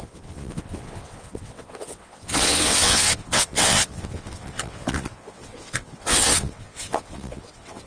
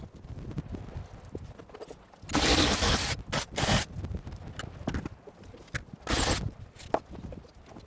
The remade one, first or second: first